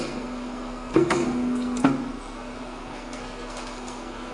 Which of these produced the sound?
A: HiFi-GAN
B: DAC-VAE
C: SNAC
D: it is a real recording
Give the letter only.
C